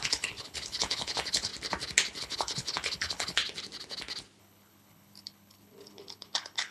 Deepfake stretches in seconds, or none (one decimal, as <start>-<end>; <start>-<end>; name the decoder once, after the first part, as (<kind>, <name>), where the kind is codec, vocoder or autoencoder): 0.0-1.5 (codec, HILCodec); 2.2-3.4; 4.4-6.7